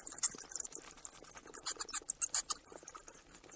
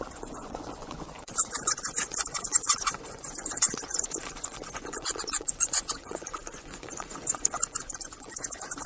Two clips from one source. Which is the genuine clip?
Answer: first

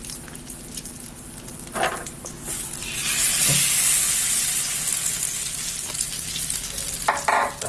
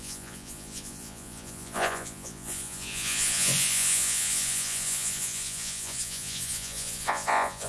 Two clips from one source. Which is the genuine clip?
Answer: first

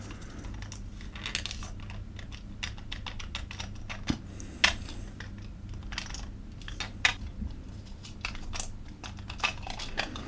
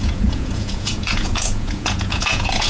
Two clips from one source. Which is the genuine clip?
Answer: first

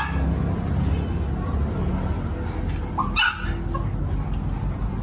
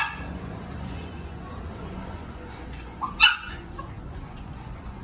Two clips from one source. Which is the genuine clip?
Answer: first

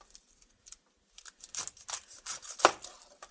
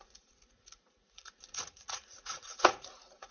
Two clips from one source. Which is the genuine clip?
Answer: first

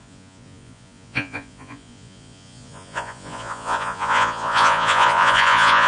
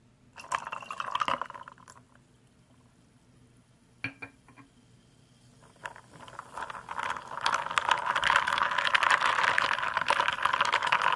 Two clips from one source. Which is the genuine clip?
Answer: second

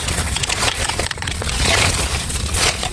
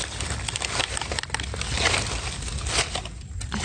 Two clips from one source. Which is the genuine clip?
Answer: second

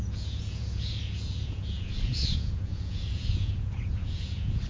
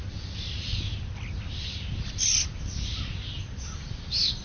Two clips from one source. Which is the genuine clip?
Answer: second